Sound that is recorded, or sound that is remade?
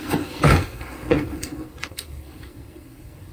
remade